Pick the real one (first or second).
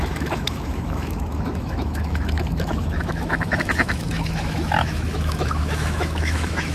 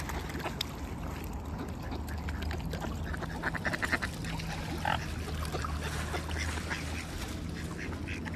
second